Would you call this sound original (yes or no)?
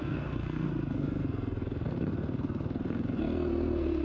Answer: no